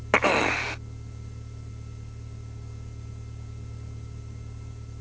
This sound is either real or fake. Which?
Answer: real